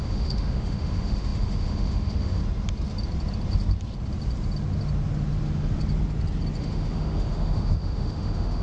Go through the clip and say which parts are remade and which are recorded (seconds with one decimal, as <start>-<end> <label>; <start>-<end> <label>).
0.0-2.4 remade; 2.4-6.6 recorded; 6.6-8.6 remade